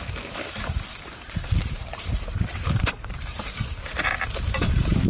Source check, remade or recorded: remade